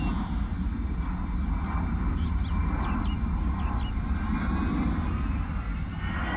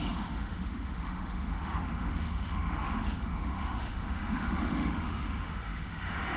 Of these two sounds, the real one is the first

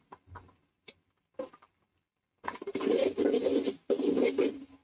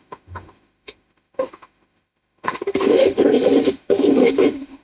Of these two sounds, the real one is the first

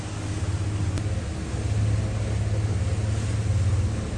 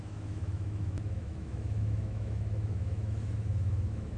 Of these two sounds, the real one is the first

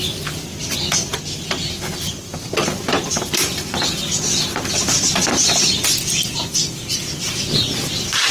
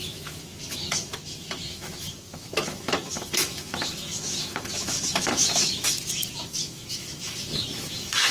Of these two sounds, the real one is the first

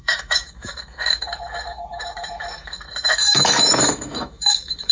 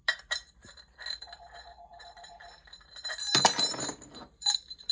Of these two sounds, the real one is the second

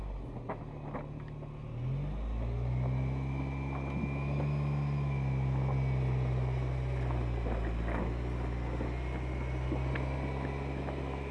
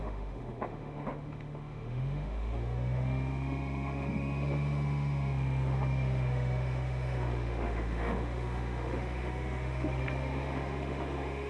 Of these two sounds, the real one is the first